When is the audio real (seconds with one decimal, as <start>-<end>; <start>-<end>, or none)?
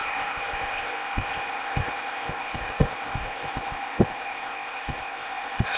none